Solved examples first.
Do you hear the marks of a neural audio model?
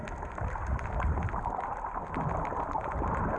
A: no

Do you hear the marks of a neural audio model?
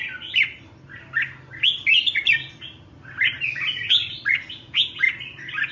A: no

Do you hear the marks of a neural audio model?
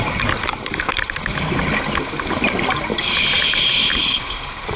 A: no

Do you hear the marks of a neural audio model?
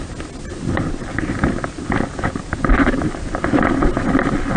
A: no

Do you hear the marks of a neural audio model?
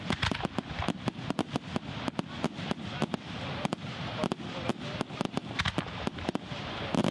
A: no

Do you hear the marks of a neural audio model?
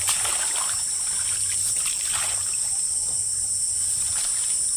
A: yes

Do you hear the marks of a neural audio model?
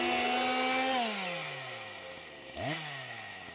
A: no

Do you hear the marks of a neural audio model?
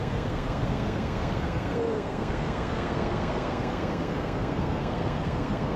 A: yes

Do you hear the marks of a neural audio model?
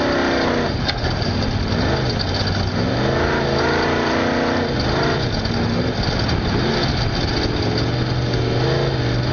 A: no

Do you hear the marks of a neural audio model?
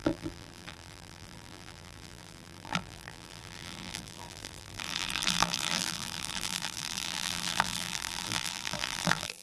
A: yes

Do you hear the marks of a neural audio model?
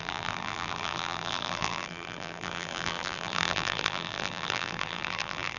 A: yes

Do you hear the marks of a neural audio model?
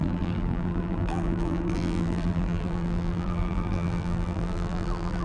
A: yes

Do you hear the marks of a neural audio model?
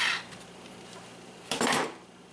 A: yes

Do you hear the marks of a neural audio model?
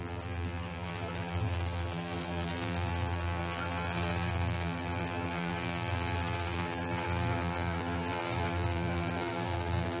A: yes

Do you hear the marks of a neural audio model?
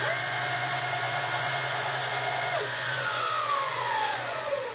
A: yes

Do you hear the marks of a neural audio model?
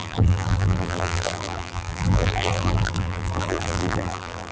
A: yes